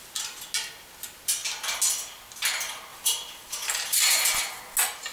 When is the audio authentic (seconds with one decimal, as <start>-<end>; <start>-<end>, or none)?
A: 0.0-2.9; 4.6-5.1